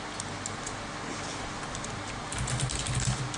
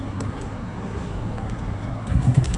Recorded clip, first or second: first